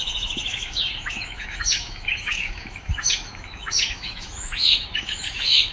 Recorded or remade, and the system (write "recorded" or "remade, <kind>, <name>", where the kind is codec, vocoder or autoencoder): remade, autoencoder, DAC-VAE